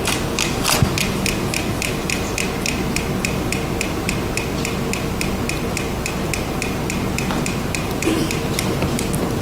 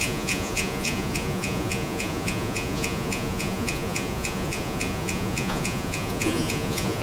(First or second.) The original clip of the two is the first